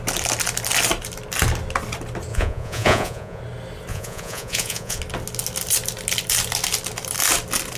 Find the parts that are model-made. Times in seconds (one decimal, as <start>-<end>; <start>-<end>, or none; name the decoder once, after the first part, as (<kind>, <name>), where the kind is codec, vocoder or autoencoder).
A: 2.3-3.4 (vocoder, Vocos); 3.9-5.0